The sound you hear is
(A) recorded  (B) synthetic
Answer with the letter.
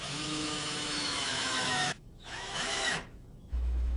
B